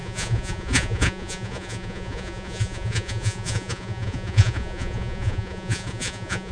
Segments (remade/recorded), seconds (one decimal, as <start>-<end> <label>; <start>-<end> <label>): 0.0-6.5 remade